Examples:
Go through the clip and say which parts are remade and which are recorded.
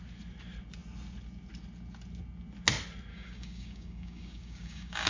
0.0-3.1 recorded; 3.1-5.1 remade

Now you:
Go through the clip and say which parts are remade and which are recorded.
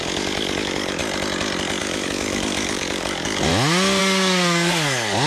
0.0-1.0 remade; 1.0-1.8 recorded; 1.8-3.5 remade; 3.5-4.0 recorded; 4.0-5.3 remade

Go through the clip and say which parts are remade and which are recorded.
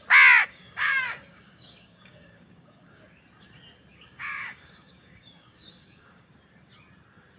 0.0-0.4 recorded; 0.4-3.0 remade; 3.0-3.9 recorded; 3.9-6.3 remade; 6.3-7.4 recorded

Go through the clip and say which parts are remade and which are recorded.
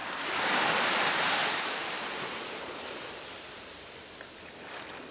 0.0-0.7 remade; 0.7-5.1 recorded